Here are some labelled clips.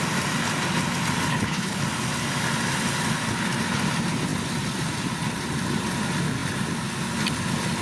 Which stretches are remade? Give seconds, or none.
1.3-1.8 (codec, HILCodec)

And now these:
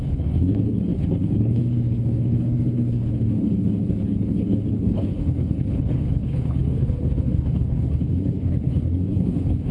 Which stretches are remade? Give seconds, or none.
0.0-9.7 (codec, HILCodec)

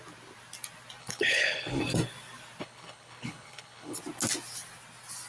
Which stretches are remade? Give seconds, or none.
1.0-1.8 (codec, HILCodec); 2.6-4.0

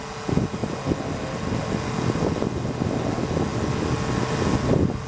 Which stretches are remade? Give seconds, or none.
none

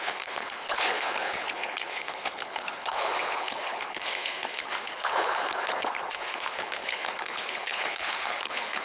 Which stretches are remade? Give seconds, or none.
0.0-8.8 (codec, HILCodec)

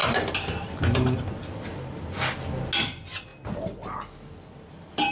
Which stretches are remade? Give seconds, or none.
none

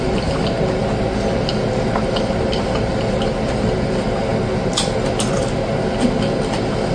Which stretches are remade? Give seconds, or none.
none